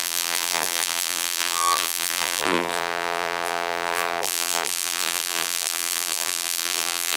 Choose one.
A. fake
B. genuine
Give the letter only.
A